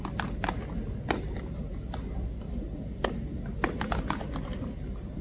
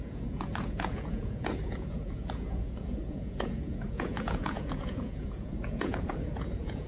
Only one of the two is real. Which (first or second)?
first